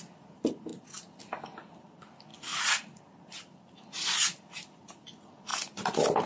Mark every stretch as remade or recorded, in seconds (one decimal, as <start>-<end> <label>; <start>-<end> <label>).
0.0-6.3 recorded